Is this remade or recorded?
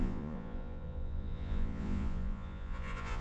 remade